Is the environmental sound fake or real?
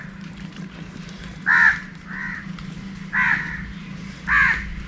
real